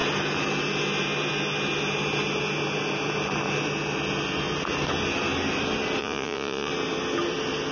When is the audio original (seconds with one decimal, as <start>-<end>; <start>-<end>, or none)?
0.0-6.0; 6.7-7.7